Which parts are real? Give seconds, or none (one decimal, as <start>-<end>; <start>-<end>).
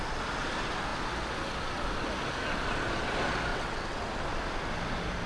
0.0-3.5; 4.0-5.3